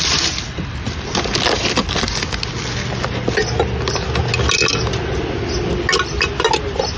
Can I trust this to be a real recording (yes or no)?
yes